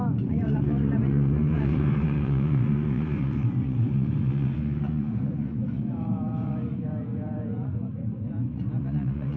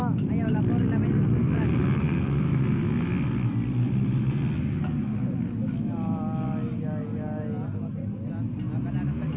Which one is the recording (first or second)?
second